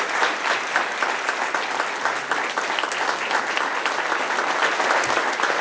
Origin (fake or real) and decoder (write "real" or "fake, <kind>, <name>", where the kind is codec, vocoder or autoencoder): real